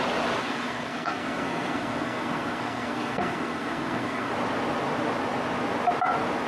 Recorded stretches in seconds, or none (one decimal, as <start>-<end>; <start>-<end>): 0.0-0.4; 4.3-6.5